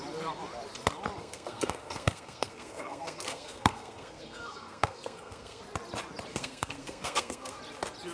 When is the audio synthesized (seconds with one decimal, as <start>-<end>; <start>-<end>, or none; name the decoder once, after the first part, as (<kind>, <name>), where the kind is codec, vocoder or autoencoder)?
1.2-5.6 (codec, SNAC); 6.3-7.6